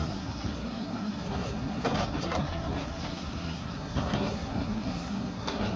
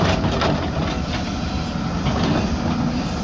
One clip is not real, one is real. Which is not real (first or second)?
first